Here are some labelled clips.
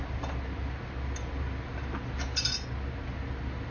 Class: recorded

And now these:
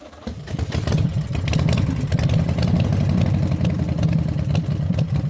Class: recorded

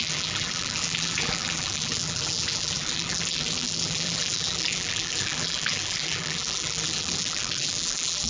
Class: remade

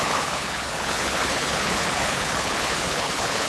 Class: remade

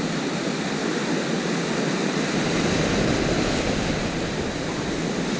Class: recorded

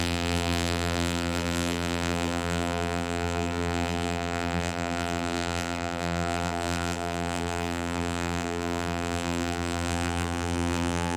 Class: remade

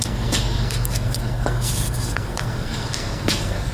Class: remade